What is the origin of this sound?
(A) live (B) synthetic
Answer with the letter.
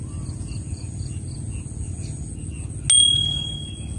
A